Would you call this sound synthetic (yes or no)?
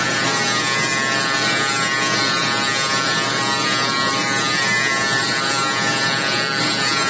no